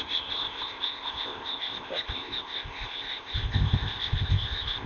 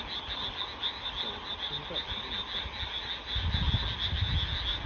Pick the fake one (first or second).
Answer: first